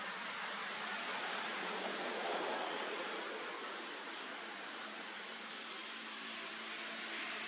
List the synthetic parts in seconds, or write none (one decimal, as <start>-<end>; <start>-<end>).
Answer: 1.1-5.3